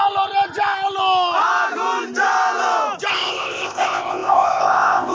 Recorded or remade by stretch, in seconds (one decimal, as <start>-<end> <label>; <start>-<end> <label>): 0.0-3.1 recorded; 3.1-5.1 remade